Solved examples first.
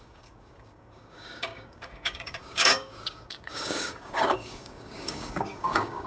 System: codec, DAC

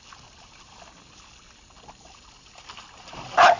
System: none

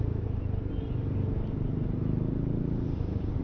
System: none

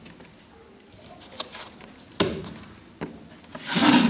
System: none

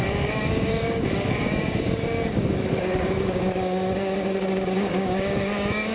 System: codec, DAC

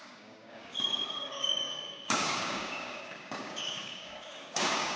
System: codec, DAC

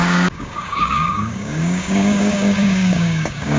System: codec, DAC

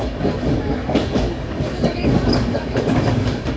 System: codec, DAC